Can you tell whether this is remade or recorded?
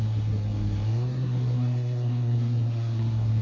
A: remade